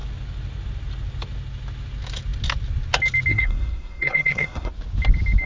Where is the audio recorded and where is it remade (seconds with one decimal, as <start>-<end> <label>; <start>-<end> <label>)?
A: 0.0-3.3 recorded; 3.3-4.7 remade; 4.7-5.5 recorded